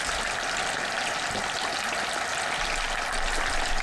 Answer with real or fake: real